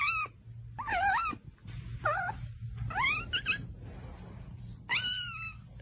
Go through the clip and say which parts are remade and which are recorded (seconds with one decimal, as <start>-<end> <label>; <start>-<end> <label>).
0.0-5.8 recorded